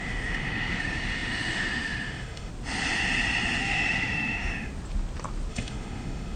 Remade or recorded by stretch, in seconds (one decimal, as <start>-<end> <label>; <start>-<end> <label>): 0.0-2.5 remade; 2.5-3.6 recorded; 3.6-4.7 remade; 4.7-5.5 recorded; 5.5-6.4 remade